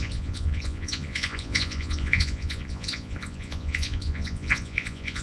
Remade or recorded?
remade